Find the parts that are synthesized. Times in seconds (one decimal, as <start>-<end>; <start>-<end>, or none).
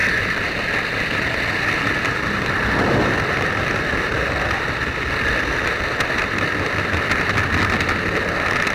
none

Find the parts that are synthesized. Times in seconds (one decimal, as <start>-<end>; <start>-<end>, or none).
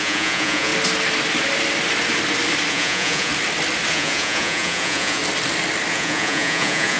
0.0-0.7; 2.7-3.3; 3.9-5.2; 5.9-7.0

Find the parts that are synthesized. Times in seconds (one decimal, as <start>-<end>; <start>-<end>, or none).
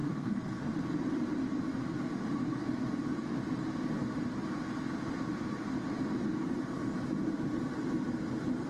0.0-0.7